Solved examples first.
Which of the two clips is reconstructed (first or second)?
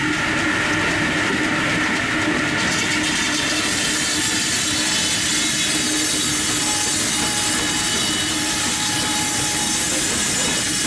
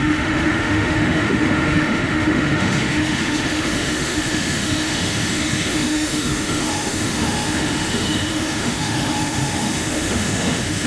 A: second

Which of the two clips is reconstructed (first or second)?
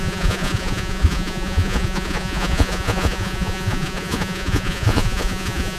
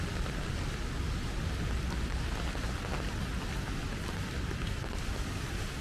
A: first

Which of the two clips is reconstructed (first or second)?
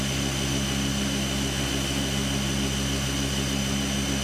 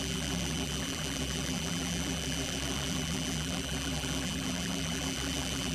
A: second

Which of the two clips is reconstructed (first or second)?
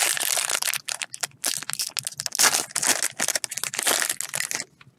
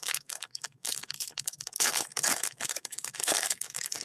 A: second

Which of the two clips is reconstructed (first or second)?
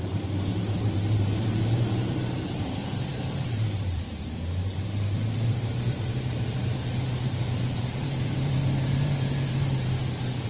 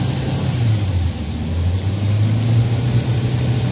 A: first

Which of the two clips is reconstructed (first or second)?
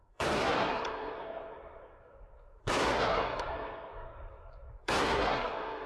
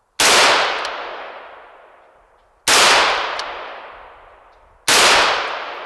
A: first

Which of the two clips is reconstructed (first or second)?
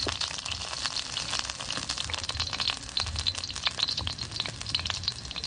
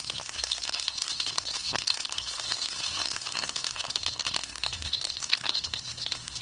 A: second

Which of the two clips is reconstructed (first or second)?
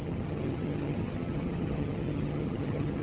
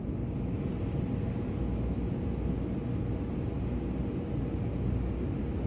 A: first